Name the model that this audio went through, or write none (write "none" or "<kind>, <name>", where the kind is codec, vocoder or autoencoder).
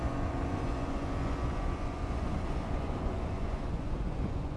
vocoder, Vocos